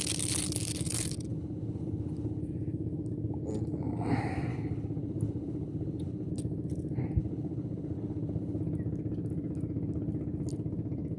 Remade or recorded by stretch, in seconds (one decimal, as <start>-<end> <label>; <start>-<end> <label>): 0.0-1.3 recorded; 1.3-2.4 remade; 2.4-4.5 recorded; 4.5-6.3 remade; 6.3-7.2 recorded; 7.2-8.6 remade; 8.6-11.2 recorded